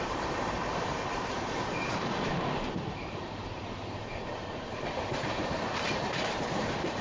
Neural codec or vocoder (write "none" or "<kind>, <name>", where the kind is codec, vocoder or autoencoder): vocoder, BigVGAN v2